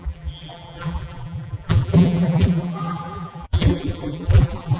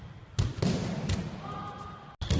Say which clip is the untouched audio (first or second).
second